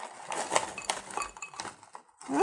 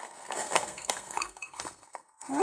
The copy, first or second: second